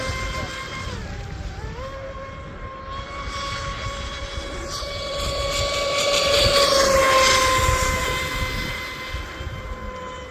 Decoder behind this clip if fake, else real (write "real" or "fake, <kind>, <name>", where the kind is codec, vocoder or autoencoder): real